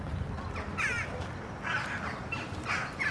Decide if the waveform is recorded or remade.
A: recorded